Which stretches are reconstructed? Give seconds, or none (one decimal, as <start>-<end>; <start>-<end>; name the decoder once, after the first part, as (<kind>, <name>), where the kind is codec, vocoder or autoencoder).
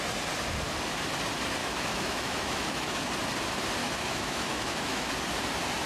1.6-3.1 (autoencoder, DAC-VAE); 3.8-5.1